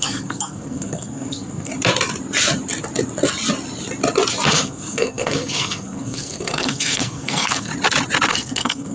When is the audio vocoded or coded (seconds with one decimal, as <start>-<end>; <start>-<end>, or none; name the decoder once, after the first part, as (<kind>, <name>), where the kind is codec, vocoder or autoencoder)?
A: 0.0-1.7 (codec, SNAC); 4.5-7.7; 8.3-8.9